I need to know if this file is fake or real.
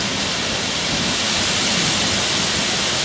real